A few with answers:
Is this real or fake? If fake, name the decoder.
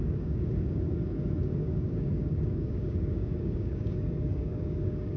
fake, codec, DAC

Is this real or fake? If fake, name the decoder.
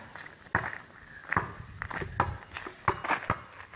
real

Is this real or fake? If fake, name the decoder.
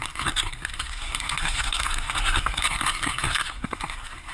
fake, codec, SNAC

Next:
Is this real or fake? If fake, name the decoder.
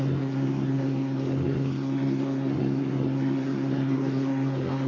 fake, codec, SNAC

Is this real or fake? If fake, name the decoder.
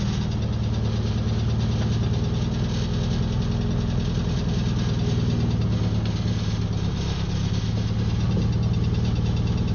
real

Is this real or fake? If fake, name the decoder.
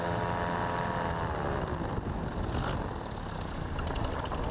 real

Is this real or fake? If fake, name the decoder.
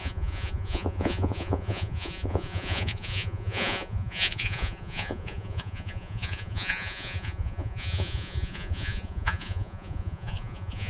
fake, vocoder, Vocos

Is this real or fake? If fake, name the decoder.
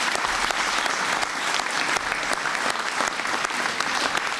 real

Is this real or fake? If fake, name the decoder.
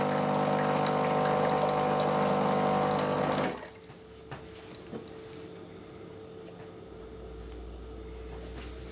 real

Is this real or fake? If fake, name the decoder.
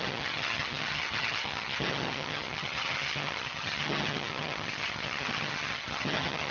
fake, vocoder, HiFi-GAN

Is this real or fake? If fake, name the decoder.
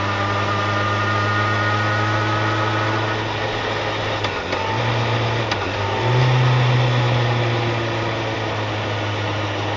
real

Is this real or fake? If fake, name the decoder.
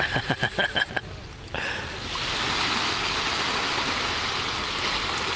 real